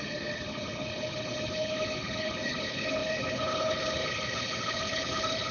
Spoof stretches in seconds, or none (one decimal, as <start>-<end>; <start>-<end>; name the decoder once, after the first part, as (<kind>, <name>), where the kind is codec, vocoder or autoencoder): 0.0-5.5 (codec, HILCodec)